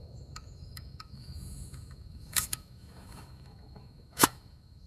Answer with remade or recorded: remade